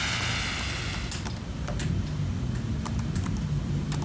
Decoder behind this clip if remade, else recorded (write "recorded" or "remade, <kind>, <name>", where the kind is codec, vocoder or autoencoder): recorded